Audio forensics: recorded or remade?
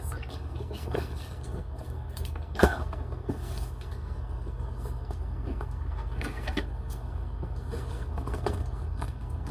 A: remade